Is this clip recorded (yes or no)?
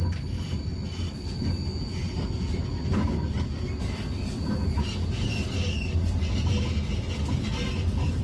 yes